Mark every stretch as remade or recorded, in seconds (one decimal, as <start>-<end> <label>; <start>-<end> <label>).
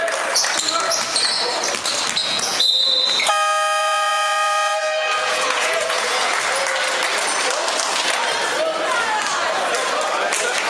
0.0-2.2 recorded; 2.2-3.3 remade; 3.3-3.8 recorded; 3.8-6.4 remade; 6.4-10.7 recorded